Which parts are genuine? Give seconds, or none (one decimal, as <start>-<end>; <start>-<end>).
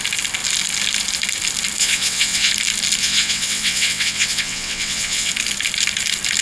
0.0-1.8; 2.5-3.0; 5.3-6.4